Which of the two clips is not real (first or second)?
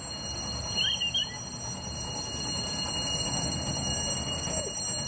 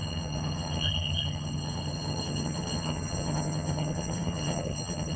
second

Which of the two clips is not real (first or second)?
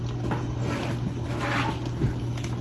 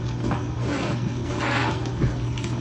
second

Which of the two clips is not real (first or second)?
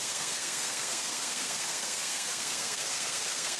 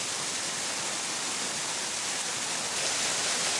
first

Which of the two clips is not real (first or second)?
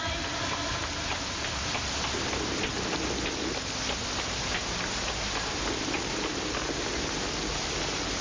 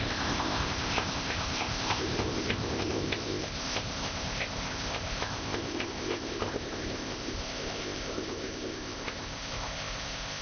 second